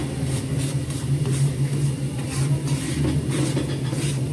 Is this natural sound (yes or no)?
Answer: yes